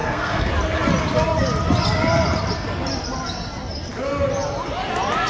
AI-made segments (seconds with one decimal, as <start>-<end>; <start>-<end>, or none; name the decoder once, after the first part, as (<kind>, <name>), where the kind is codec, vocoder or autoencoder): 0.0-0.5 (codec, SNAC)